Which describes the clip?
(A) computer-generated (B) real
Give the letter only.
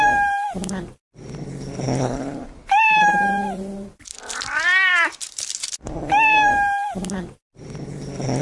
A